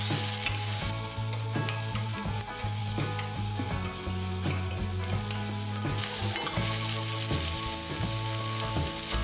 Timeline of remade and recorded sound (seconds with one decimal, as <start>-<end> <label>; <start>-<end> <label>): 0.0-9.2 recorded